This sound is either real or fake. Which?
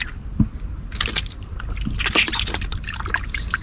real